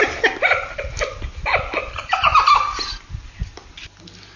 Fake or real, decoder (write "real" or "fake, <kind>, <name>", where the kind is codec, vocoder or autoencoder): real